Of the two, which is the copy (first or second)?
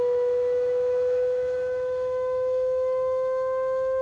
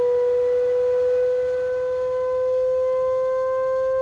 first